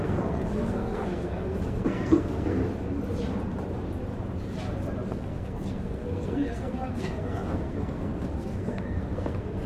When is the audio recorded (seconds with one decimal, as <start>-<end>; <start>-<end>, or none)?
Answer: 2.6-5.1